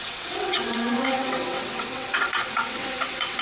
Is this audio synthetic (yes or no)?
yes